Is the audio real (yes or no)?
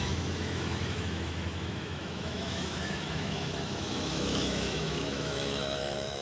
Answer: no